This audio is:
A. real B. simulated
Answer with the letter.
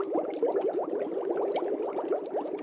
A